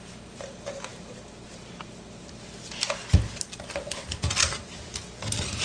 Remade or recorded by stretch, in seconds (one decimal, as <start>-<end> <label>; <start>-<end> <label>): 0.0-5.6 recorded

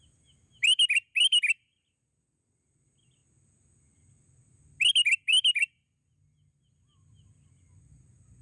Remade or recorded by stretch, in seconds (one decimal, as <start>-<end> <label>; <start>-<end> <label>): 0.0-8.4 recorded

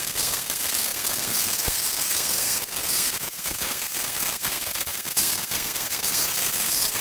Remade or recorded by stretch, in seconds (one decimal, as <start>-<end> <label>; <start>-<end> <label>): 0.0-7.0 remade

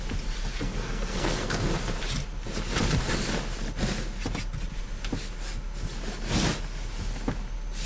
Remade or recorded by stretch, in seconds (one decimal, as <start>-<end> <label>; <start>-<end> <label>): 0.0-0.4 recorded; 0.4-1.7 remade; 1.7-7.8 recorded

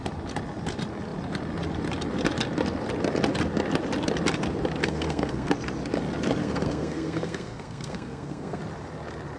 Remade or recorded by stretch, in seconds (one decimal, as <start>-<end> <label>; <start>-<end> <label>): 0.0-4.8 recorded; 4.8-5.5 remade; 5.5-6.4 recorded; 6.4-8.6 remade; 8.6-9.4 recorded

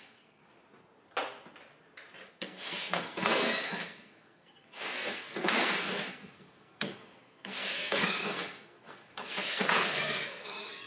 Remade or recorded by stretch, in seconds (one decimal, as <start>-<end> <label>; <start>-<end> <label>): 0.0-0.4 remade; 0.4-2.3 recorded; 2.3-10.9 remade